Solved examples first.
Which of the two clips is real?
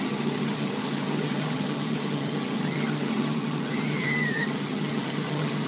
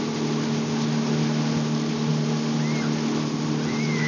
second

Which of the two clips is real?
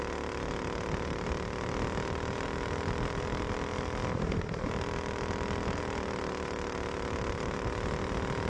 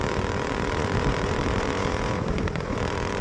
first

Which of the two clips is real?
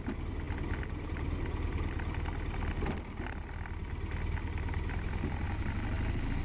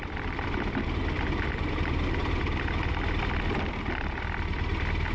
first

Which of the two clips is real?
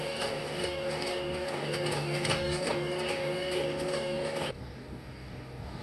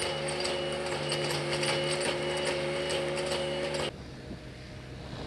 second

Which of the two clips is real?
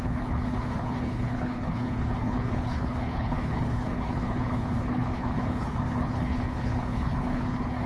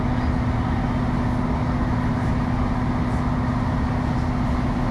second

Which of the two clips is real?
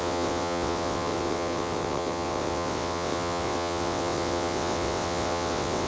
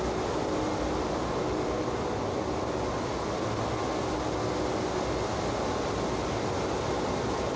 second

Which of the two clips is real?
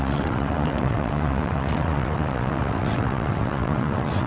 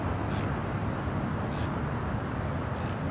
second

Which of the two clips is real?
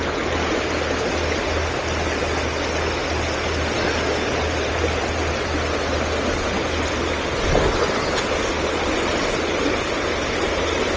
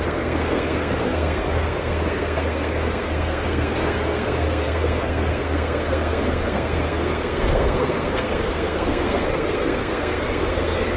first